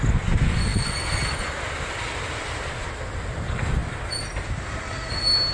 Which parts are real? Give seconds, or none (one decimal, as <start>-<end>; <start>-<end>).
0.0-5.5